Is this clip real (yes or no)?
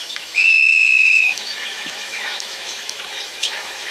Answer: no